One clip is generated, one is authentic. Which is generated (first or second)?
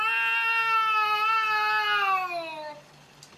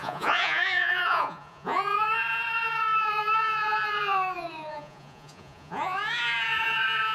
second